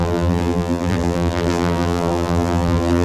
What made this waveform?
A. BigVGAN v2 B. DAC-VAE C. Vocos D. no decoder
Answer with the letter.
A